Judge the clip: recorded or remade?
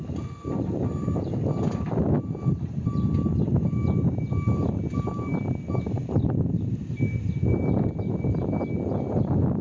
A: recorded